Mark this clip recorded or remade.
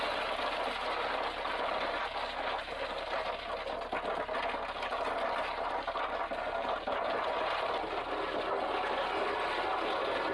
recorded